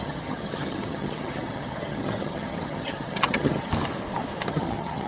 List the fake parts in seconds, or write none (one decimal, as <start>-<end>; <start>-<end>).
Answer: 0.0-3.7; 4.5-5.1